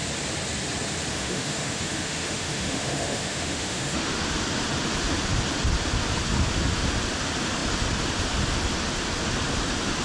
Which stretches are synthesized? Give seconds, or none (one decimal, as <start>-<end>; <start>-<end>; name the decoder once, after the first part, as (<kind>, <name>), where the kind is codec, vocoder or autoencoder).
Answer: 1.1-4.2 (autoencoder, DAC-VAE)